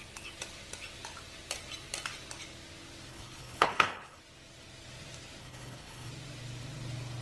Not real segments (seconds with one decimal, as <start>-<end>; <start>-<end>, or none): 3.1-4.2; 5.4-6.1